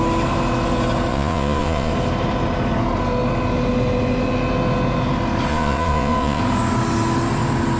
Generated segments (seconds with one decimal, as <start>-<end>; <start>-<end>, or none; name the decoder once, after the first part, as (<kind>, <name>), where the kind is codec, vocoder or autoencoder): 1.1-1.9 (vocoder, Vocos); 5.5-6.4